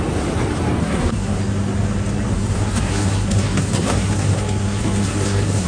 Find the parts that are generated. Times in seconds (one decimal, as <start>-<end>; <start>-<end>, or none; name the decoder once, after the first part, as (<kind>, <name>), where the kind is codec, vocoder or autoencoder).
0.8-1.4 (codec, SNAC); 2.3-5.7